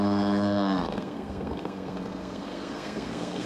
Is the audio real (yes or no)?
no